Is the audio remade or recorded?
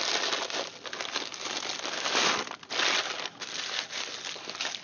recorded